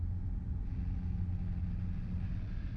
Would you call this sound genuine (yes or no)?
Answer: yes